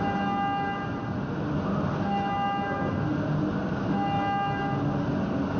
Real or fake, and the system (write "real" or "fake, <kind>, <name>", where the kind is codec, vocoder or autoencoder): real